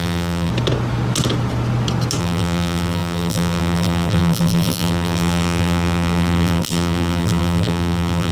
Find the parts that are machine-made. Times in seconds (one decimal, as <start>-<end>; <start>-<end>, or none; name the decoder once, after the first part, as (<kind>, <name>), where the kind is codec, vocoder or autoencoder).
0.0-0.5 (vocoder, BigVGAN v2); 2.2-8.3